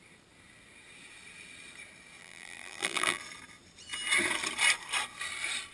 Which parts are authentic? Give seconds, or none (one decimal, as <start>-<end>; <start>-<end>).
0.0-2.2; 3.2-5.7